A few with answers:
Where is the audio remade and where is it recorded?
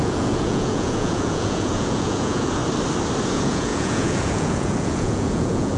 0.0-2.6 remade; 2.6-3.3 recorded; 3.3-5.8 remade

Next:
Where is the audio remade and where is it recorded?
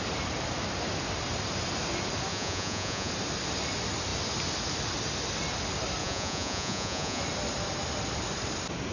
0.0-2.3 recorded; 2.3-3.1 remade; 3.1-6.0 recorded; 6.0-7.2 remade; 7.2-8.9 recorded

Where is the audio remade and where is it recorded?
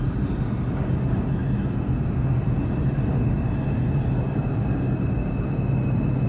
0.0-6.3 recorded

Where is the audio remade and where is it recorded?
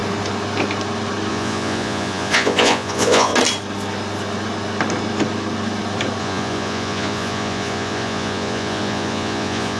0.0-1.3 recorded; 1.3-3.3 remade; 3.3-6.2 recorded; 6.2-9.8 remade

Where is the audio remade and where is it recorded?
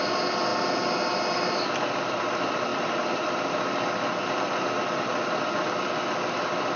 0.0-6.8 recorded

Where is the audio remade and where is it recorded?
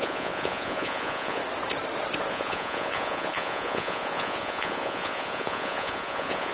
0.0-1.4 remade; 1.4-2.3 recorded; 2.3-6.5 remade